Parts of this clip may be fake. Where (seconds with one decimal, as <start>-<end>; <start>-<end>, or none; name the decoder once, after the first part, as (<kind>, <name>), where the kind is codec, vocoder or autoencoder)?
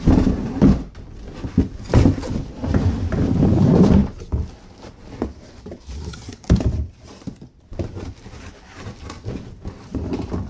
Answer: none